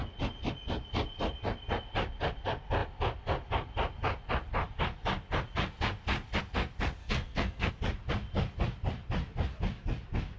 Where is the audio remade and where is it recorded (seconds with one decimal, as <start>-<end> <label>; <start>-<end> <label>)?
0.0-7.0 recorded; 7.0-7.7 remade; 7.7-10.4 recorded